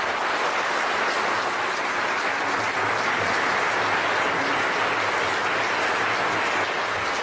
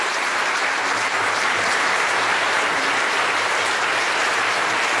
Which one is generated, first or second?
second